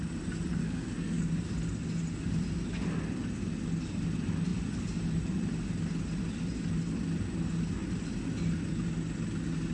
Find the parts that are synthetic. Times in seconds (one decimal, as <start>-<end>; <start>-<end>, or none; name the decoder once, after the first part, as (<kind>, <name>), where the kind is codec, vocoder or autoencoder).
0.6-1.2 (codec, SNAC)